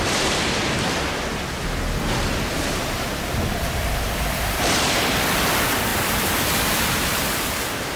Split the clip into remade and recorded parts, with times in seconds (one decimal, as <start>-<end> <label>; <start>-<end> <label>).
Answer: 0.0-8.0 remade

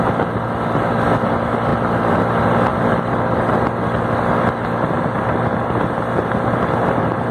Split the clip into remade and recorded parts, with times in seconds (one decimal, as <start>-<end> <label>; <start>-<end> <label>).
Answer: 0.0-7.3 recorded